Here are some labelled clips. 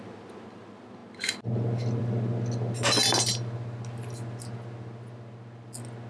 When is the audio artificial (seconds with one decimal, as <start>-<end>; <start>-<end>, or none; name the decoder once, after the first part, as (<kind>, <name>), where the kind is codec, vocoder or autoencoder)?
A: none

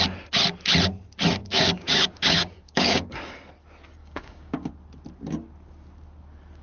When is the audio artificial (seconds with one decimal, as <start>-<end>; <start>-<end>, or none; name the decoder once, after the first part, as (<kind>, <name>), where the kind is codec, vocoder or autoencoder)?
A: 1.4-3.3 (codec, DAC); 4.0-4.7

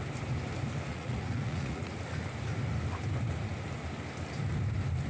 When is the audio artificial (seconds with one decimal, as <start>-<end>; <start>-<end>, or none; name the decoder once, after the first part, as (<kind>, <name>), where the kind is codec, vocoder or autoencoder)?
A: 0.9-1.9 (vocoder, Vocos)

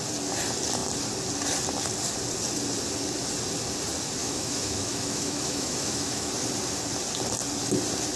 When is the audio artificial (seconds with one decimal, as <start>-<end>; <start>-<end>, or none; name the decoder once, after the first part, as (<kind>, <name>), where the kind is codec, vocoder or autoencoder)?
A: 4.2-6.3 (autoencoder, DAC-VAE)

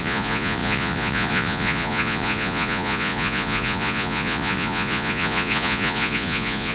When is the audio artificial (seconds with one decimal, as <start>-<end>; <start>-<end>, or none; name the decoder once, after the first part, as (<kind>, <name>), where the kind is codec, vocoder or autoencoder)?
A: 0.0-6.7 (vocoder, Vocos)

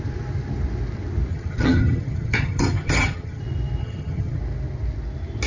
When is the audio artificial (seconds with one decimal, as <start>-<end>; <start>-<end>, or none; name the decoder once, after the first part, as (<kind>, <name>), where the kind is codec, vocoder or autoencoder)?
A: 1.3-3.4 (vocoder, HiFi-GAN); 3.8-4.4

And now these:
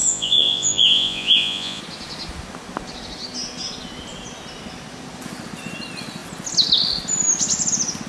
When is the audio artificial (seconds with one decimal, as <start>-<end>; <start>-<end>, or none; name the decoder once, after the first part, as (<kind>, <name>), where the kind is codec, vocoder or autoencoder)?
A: 0.0-1.8 (vocoder, Vocos)